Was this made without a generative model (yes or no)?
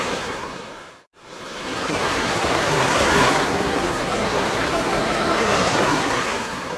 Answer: no